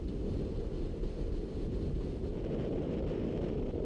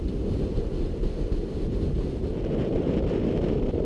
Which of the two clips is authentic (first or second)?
first